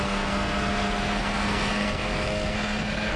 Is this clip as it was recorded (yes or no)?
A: no